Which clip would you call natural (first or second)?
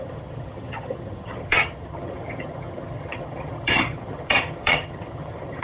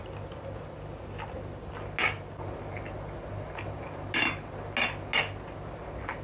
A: second